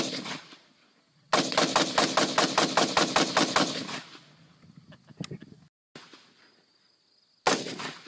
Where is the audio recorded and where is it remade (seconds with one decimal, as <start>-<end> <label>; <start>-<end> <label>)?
0.0-8.1 recorded

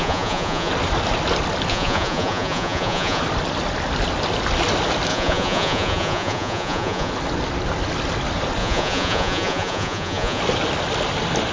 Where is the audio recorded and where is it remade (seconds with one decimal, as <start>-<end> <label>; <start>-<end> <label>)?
0.0-0.7 remade; 0.7-1.7 recorded; 1.7-3.2 remade; 3.2-5.1 recorded; 5.1-7.1 remade; 7.1-8.6 recorded; 8.6-10.4 remade; 10.4-11.5 recorded

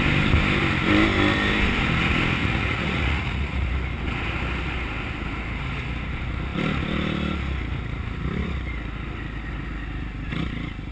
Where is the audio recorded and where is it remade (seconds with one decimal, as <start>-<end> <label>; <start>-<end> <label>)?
0.0-2.4 recorded; 2.4-3.7 remade; 3.7-10.9 recorded